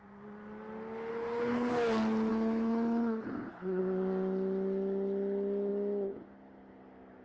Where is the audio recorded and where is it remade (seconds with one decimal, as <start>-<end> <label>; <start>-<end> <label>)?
0.0-1.1 recorded; 1.1-1.7 remade; 1.7-2.3 recorded; 2.3-3.8 remade; 3.8-7.2 recorded